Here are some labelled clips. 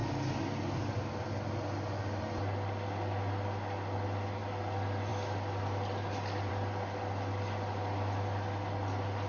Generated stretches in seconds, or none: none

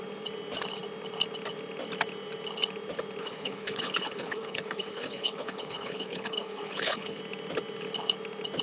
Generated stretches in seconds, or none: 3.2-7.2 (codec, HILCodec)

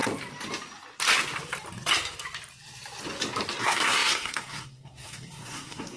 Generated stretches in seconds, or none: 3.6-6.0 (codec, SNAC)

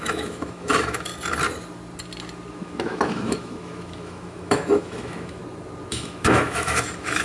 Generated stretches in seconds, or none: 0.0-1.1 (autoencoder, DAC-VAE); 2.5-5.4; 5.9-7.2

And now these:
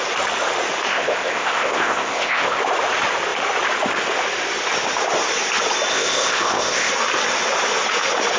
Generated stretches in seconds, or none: 0.9-2.6 (codec, ZipCodec); 5.9-6.9

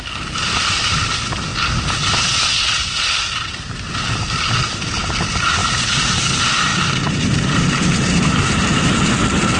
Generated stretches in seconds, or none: 5.6-6.2 (vocoder, BigVGAN v2); 6.7-8.7